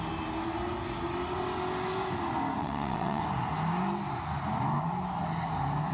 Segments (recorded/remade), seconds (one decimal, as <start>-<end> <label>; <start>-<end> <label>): 0.0-2.6 recorded; 2.6-3.2 remade; 3.2-5.9 recorded